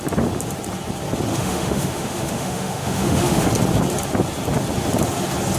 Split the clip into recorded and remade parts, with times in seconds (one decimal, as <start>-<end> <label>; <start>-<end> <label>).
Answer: 0.0-1.3 recorded; 1.3-3.5 remade; 3.5-5.6 recorded